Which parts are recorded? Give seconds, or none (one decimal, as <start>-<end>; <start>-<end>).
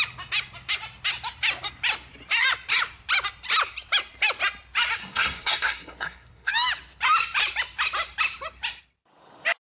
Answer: 0.0-5.0; 6.5-9.7